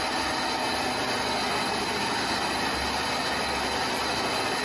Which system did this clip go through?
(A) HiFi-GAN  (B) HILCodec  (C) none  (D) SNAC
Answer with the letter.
C